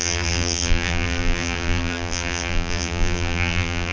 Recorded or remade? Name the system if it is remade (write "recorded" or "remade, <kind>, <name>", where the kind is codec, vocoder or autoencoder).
remade, vocoder, BigVGAN v2